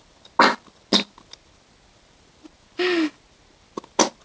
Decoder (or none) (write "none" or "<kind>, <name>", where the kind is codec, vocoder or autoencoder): none